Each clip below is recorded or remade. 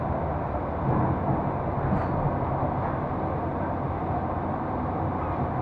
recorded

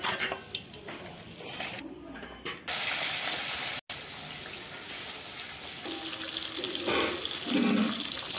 recorded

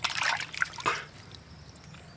recorded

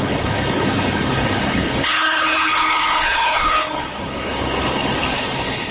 remade